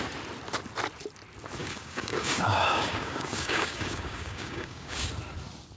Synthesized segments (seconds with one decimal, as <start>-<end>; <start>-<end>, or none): 1.6-5.1